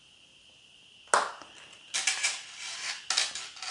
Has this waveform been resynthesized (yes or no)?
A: no